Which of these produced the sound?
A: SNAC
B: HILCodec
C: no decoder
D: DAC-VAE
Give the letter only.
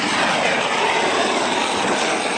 C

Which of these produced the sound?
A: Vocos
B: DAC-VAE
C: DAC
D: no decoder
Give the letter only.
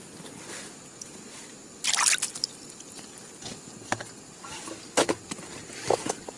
D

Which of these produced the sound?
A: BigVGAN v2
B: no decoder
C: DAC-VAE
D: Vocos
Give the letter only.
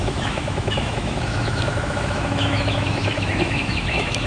C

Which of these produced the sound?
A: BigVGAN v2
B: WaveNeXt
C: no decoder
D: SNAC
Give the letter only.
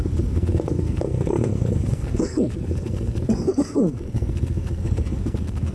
D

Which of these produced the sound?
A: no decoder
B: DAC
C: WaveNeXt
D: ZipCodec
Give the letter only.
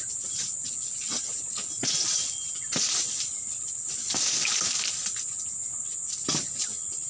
A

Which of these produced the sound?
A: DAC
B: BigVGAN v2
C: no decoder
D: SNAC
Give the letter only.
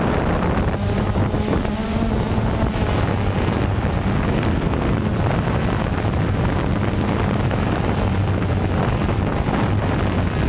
C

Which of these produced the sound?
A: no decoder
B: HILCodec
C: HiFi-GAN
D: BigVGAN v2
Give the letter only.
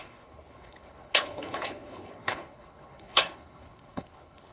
B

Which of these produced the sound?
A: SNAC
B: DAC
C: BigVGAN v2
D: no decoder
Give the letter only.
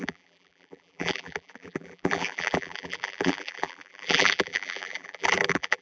C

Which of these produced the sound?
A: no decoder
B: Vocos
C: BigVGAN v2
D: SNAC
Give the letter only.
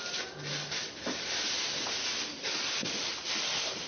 A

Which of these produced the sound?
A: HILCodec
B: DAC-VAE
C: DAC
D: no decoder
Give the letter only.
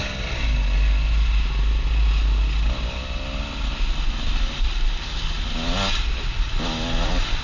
D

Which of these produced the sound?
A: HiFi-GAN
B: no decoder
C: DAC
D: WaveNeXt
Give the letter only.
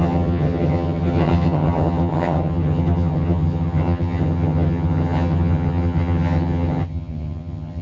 A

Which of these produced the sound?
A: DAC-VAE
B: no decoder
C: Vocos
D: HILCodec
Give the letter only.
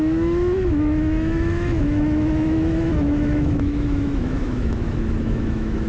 A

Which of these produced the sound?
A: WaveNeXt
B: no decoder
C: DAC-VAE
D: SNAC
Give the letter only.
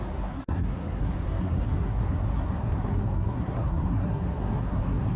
D